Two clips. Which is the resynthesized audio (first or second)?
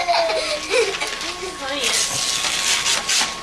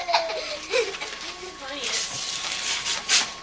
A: second